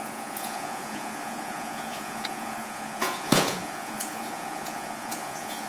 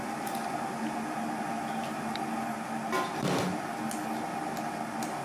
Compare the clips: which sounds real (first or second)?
second